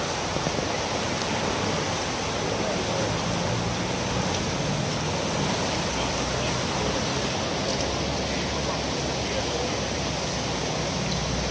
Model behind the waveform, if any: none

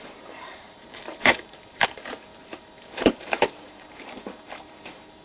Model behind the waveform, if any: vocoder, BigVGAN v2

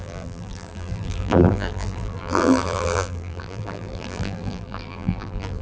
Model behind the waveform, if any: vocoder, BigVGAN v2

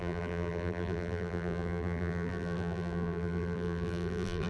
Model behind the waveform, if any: vocoder, BigVGAN v2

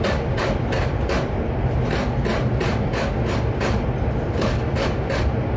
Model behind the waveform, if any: vocoder, BigVGAN v2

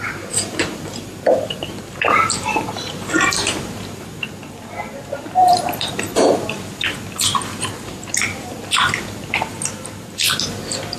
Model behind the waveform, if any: vocoder, BigVGAN v2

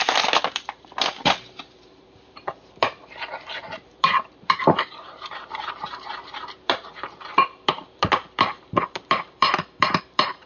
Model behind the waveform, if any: vocoder, BigVGAN v2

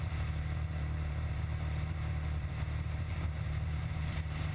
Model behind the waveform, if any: vocoder, BigVGAN v2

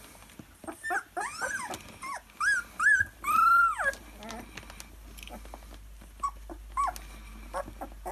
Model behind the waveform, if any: none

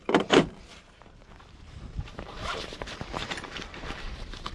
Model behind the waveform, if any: vocoder, BigVGAN v2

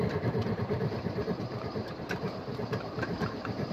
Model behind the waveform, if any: vocoder, BigVGAN v2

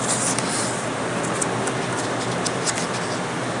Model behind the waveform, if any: none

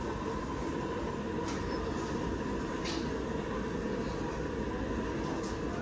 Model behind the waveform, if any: none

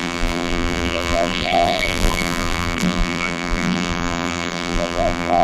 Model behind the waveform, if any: vocoder, BigVGAN v2